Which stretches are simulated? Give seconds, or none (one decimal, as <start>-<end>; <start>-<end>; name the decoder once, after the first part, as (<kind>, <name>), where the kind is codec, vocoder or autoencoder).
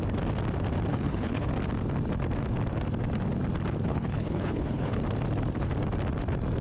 0.9-1.5 (codec, HILCodec); 3.9-5.0